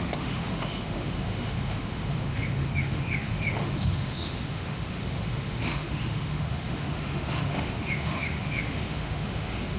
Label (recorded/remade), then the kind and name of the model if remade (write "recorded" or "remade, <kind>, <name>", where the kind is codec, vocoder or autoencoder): remade, autoencoder, DAC-VAE